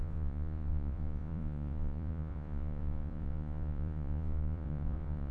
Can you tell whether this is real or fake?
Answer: fake